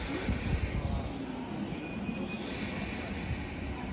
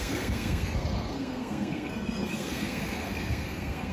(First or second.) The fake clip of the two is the second